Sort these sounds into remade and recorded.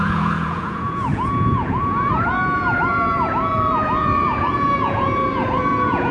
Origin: remade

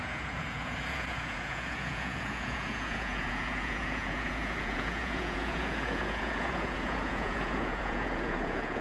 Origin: remade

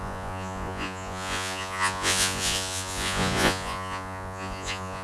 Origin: remade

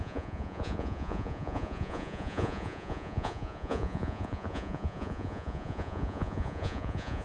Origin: remade